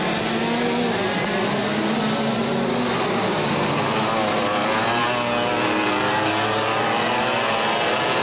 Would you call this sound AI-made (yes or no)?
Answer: no